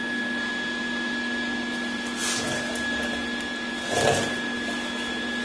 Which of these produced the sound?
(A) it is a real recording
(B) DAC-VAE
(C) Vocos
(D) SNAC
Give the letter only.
A